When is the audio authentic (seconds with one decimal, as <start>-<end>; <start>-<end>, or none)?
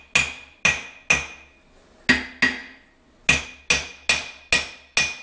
0.0-5.2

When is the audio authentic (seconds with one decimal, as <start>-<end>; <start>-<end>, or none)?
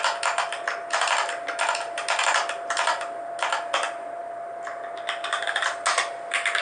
0.0-6.6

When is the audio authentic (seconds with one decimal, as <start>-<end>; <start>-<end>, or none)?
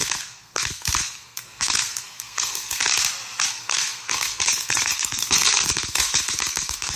2.8-3.5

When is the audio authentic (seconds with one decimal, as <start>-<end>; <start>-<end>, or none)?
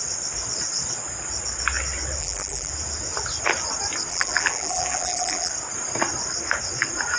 0.0-2.2; 2.7-4.1; 5.5-7.2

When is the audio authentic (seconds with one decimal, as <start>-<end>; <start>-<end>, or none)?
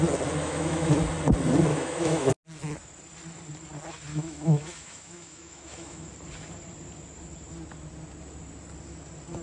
0.0-0.4; 0.9-1.7; 2.3-4.1; 6.1-9.4